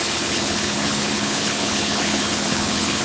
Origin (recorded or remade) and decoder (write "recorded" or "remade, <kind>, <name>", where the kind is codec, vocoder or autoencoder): remade, codec, HILCodec